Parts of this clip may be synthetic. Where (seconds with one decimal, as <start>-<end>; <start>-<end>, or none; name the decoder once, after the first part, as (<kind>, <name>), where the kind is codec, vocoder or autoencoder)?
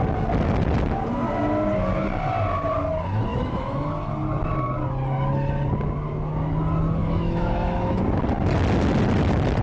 3.3-3.9 (autoencoder, DAC-VAE); 7.0-8.0